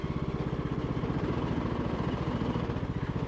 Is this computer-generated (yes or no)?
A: no